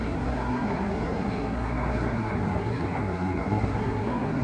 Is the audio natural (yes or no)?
no